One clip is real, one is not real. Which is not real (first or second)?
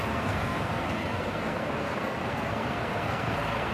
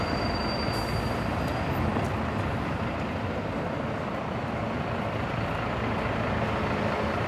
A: first